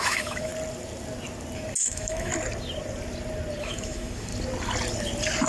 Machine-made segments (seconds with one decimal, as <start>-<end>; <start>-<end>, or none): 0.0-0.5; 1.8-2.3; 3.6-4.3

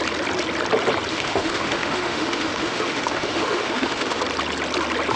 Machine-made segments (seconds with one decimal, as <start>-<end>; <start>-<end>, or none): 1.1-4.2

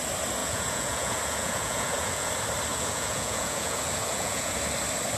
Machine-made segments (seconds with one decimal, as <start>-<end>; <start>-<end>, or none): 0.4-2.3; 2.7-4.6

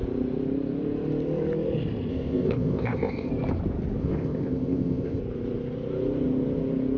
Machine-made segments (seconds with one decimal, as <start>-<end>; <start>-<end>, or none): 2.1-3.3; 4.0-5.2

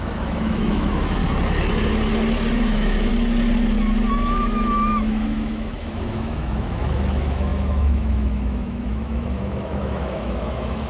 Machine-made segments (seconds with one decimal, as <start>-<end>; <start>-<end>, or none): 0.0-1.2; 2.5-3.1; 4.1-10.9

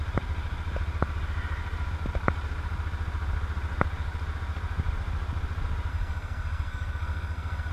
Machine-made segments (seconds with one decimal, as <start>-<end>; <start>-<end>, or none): 5.9-7.7

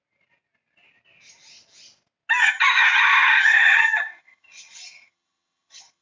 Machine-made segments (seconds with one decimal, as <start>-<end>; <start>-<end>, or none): 2.4-6.0

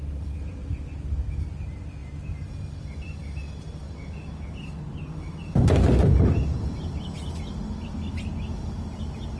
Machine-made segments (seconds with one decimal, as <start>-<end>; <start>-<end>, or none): none